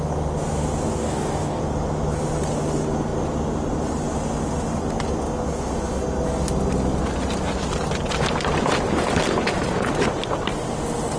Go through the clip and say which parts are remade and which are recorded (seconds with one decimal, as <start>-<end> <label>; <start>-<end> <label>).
0.0-1.0 recorded; 1.0-1.6 remade; 1.6-11.2 recorded